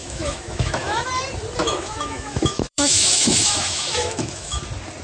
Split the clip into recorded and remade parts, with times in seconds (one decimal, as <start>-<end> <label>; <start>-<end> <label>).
0.0-1.1 remade; 1.1-1.6 recorded; 1.6-4.6 remade; 4.6-5.0 recorded